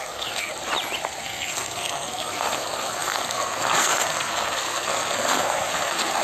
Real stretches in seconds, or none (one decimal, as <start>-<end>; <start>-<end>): 0.5-1.2